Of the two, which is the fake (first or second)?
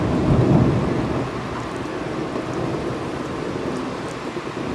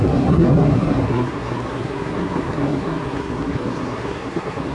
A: second